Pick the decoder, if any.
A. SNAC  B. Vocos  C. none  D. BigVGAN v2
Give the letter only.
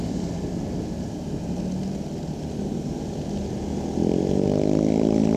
C